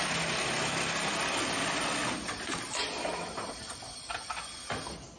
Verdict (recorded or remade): recorded